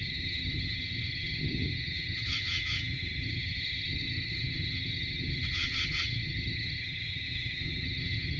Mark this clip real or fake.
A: fake